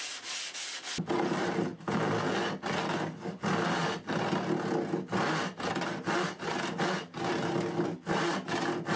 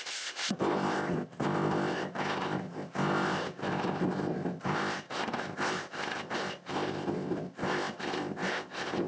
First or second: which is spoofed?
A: second